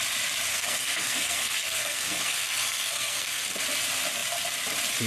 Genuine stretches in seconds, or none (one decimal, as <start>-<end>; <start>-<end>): 0.0-0.5; 3.6-5.1